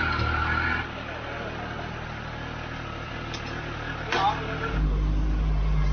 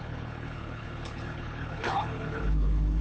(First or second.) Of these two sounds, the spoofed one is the second